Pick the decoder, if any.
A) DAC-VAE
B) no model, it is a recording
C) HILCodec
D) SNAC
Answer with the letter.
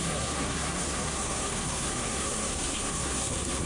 D